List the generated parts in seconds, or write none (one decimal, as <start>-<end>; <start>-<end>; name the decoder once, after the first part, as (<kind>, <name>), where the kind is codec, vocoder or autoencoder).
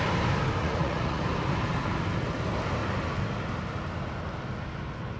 0.6-1.2 (vocoder, Vocos)